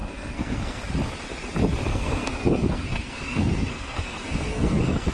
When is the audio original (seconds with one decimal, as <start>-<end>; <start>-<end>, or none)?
0.8-1.9